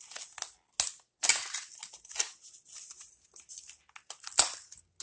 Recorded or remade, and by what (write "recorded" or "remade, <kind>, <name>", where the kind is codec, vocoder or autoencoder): recorded